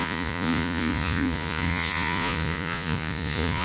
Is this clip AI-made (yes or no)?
yes